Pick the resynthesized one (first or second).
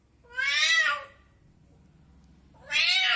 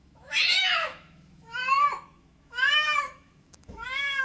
second